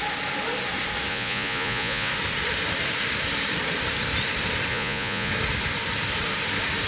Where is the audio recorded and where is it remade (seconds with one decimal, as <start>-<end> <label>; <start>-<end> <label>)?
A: 0.0-1.1 recorded; 1.1-2.1 remade; 2.1-4.7 recorded; 4.7-5.3 remade; 5.3-6.9 recorded